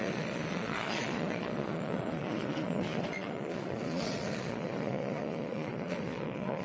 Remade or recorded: remade